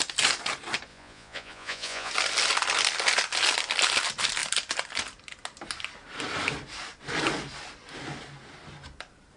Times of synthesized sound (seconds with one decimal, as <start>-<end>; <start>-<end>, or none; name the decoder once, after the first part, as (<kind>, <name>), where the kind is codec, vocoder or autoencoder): 0.9-2.1 (vocoder, Vocos)